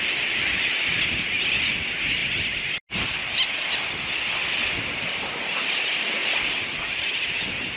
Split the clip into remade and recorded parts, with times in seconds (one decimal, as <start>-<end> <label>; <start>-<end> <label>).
0.0-7.8 recorded